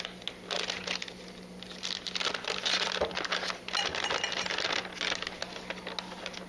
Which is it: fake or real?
real